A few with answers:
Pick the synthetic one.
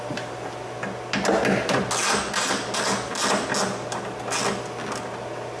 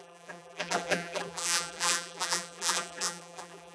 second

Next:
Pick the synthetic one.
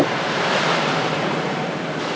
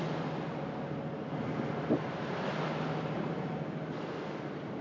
first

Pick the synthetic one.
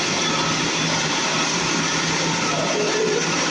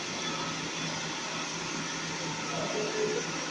first